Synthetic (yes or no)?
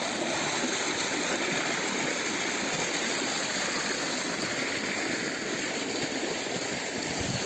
no